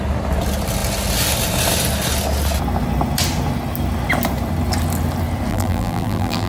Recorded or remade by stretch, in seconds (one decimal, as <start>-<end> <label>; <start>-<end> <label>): 0.0-5.5 recorded; 5.5-6.5 remade